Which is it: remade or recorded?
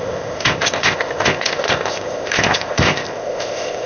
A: remade